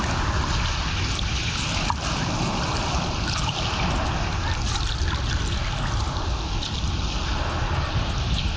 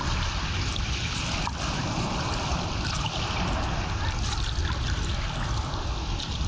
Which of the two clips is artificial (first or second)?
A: second